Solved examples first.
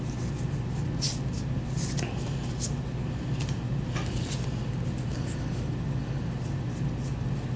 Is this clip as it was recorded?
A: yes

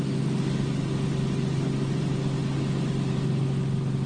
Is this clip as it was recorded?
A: yes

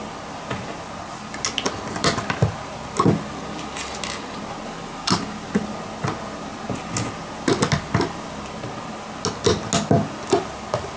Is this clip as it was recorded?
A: yes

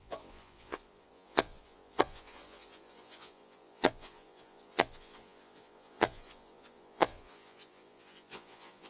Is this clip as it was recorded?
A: no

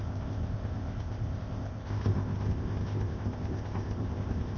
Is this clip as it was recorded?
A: no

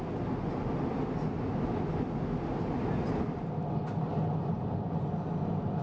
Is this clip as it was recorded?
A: yes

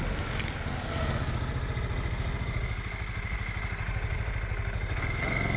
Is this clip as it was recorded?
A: yes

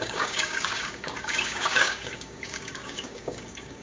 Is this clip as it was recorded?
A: no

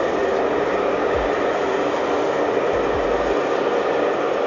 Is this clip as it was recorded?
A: yes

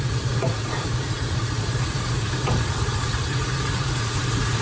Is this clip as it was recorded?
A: no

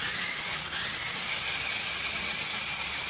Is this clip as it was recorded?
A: yes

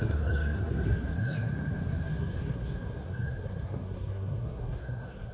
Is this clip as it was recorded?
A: no